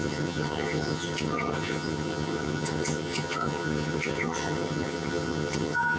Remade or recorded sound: remade